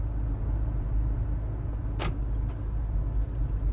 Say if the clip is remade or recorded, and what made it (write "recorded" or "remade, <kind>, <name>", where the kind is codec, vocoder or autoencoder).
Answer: recorded